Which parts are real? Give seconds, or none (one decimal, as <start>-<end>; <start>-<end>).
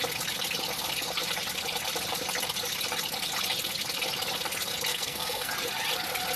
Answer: 0.0-4.9; 5.5-6.4